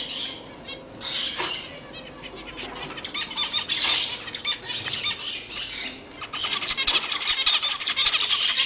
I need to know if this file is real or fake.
real